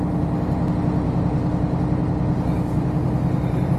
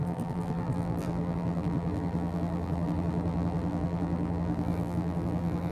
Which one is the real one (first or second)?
first